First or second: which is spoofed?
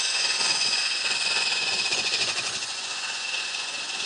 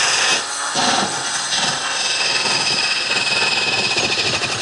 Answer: first